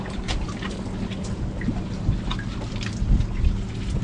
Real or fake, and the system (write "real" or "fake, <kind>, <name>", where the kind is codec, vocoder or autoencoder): real